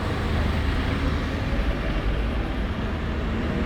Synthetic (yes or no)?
no